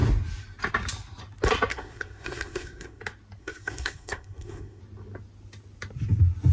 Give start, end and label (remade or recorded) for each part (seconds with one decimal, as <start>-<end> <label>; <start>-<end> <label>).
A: 0.0-1.7 recorded; 1.7-3.0 remade; 3.0-3.4 recorded; 3.4-4.8 remade; 4.8-6.5 recorded